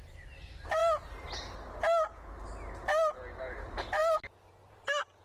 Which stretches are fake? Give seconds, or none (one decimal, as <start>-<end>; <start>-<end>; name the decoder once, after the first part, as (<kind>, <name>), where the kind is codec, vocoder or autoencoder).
0.0-0.8 (vocoder, BigVGAN v2); 3.4-4.0; 4.6-5.2